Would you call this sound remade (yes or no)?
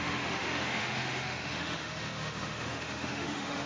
yes